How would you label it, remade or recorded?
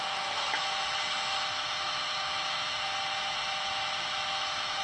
remade